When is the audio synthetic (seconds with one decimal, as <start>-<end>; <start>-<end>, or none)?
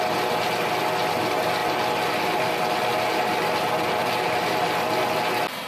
none